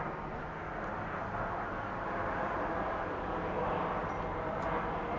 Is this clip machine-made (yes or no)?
no